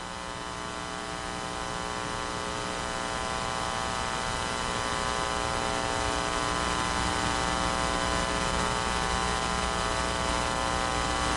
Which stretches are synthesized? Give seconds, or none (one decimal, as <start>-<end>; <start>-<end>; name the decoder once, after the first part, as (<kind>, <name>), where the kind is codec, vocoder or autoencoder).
none

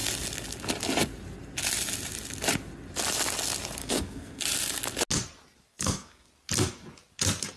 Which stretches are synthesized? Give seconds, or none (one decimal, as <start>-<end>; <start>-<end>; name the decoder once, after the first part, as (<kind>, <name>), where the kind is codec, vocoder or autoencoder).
3.8-4.4 (codec, SNAC); 5.7-6.3

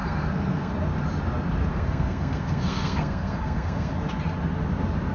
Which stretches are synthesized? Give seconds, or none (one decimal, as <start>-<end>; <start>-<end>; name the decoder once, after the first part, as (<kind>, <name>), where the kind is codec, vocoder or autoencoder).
0.0-0.7 (codec, SNAC); 1.7-3.9

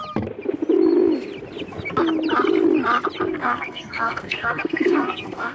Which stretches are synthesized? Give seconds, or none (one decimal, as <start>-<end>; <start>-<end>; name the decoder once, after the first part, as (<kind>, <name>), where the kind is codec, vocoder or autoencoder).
3.3-5.5 (codec, SNAC)